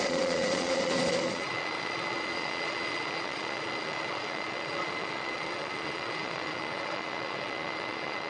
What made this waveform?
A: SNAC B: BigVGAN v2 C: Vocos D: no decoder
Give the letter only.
C